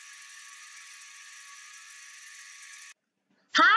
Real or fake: real